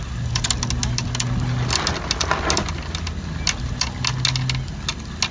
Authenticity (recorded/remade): recorded